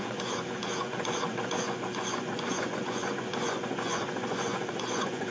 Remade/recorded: remade